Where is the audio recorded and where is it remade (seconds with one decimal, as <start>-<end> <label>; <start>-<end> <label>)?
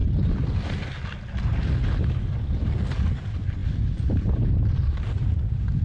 0.0-5.8 recorded